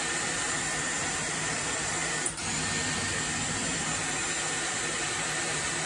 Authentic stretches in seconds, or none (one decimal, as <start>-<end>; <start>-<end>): 2.0-5.4